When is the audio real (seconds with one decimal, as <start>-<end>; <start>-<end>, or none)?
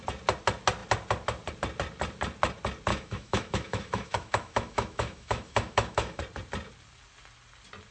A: 0.0-2.9; 6.2-7.9